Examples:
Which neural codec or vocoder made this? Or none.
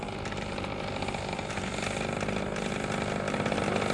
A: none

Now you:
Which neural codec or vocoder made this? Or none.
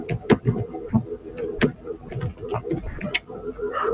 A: none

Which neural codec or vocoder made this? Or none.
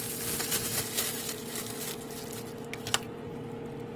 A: none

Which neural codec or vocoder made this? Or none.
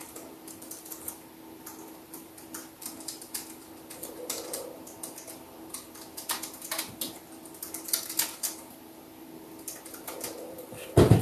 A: vocoder, BigVGAN v2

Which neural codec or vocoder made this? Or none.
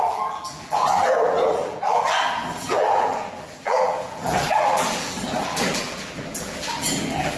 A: vocoder, BigVGAN v2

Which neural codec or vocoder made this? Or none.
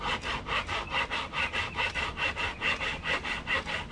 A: none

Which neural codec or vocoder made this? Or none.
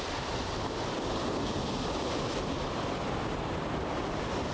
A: vocoder, BigVGAN v2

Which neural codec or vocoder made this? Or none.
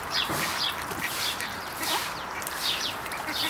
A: vocoder, BigVGAN v2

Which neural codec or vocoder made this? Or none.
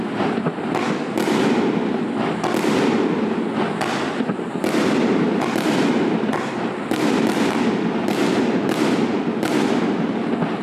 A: none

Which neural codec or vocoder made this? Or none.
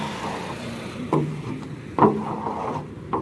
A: vocoder, BigVGAN v2